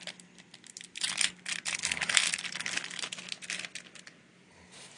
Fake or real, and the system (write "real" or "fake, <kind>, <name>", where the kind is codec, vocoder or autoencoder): real